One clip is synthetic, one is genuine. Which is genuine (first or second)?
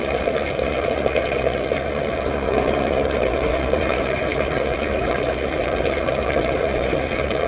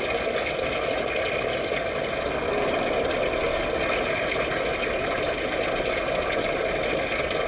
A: second